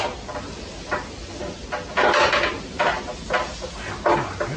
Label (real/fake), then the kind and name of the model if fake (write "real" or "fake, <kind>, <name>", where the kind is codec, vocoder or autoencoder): real